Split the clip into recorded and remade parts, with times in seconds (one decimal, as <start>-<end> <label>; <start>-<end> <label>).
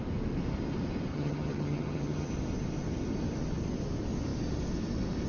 0.0-1.1 recorded; 1.1-2.3 remade; 2.3-5.3 recorded